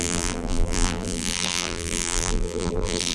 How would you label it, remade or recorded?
remade